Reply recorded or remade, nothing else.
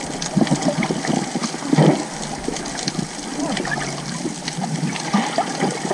recorded